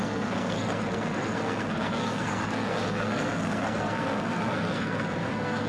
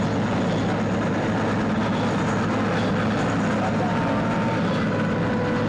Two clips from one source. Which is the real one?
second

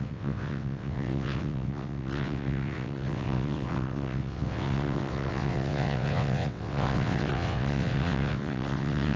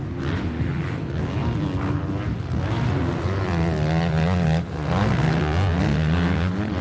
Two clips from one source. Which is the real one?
second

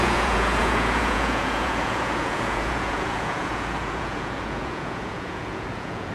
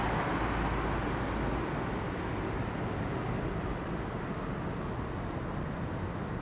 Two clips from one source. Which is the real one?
second